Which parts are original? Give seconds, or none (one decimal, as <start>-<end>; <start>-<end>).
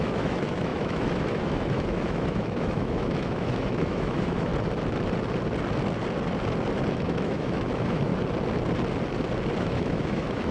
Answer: 4.5-6.9; 8.1-9.6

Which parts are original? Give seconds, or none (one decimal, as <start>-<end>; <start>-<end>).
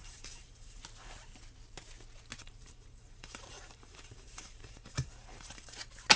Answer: 0.8-2.4; 5.8-6.2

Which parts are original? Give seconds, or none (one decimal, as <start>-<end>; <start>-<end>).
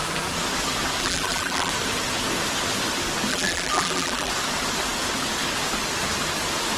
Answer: 0.0-1.0; 1.7-3.3; 4.3-6.8